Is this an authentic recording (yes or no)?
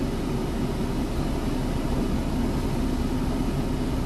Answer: yes